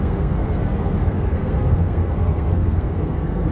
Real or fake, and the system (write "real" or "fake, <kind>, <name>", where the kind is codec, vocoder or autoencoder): fake, codec, SNAC